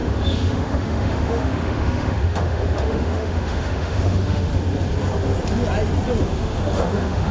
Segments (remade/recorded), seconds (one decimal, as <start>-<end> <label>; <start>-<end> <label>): 0.0-4.5 remade; 4.5-6.2 recorded; 6.2-7.3 remade